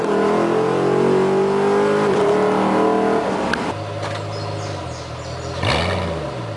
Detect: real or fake real